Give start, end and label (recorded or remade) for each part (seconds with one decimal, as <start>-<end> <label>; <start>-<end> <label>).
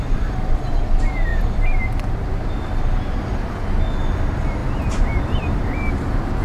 0.0-6.4 recorded